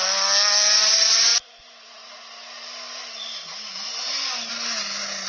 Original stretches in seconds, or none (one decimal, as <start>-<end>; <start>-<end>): 0.0-5.3